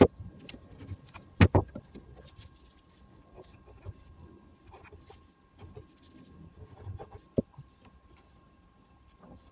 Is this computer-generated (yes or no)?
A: no